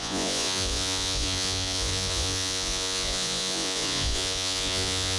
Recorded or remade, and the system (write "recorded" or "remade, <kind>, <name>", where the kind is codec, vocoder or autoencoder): remade, vocoder, Vocos